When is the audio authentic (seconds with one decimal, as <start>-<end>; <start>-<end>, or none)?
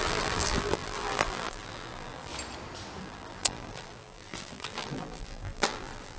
2.3-3.0